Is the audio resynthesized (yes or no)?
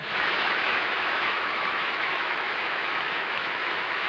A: yes